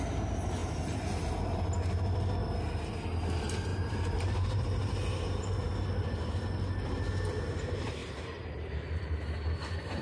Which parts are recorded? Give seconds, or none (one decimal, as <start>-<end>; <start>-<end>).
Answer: 0.0-3.7; 5.5-8.0; 9.1-10.0